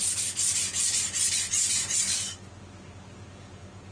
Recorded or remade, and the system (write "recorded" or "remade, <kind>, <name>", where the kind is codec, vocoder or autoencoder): recorded